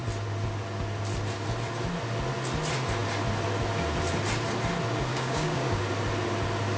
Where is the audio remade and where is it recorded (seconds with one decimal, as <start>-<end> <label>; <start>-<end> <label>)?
0.0-5.1 recorded; 5.1-5.8 remade; 5.8-6.8 recorded